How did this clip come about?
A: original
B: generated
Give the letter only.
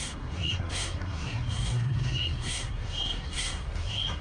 B